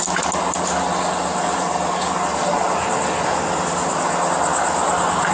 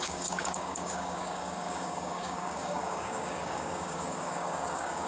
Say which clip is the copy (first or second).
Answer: second